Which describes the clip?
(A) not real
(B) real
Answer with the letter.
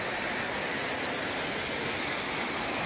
B